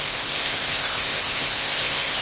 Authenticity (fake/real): fake